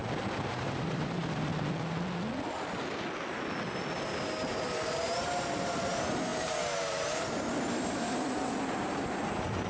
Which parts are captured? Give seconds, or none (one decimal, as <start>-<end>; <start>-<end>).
0.0-0.5; 1.5-4.6